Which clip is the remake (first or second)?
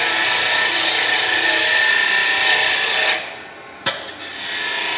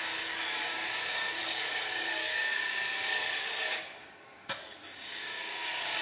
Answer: second